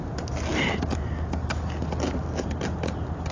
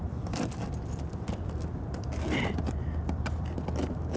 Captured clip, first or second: first